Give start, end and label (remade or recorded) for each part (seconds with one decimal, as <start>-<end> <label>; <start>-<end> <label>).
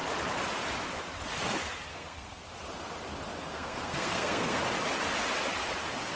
0.0-1.9 recorded; 1.9-2.4 remade; 2.4-3.5 recorded; 3.5-4.6 remade; 4.6-6.2 recorded